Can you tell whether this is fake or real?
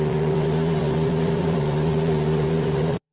fake